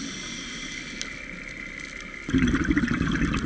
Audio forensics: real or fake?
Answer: real